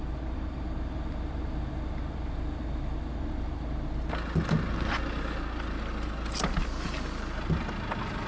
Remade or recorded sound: recorded